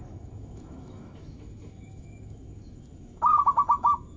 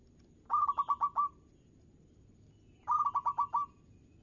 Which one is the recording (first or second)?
second